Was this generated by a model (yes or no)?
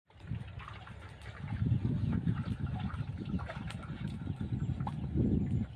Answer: no